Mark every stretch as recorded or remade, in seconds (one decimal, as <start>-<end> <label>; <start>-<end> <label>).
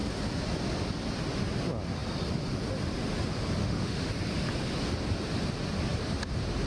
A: 0.0-3.6 recorded; 3.6-4.1 remade; 4.1-6.7 recorded